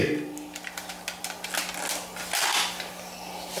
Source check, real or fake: real